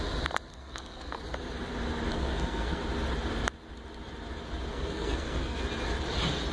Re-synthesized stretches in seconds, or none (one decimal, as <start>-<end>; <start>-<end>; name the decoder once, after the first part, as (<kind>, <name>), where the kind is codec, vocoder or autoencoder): 0.5-1.2 (codec, SNAC); 2.1-2.8; 4.7-5.6